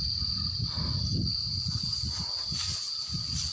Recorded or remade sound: recorded